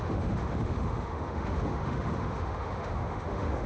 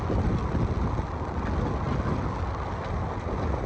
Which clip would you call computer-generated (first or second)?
first